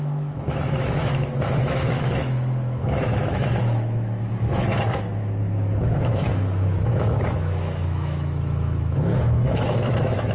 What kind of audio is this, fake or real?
fake